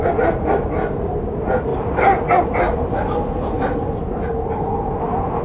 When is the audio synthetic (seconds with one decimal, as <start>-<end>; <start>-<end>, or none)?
none